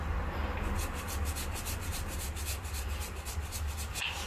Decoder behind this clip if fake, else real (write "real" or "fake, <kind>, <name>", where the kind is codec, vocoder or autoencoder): real